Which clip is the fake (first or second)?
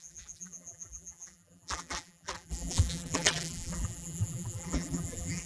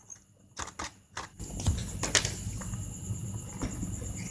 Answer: first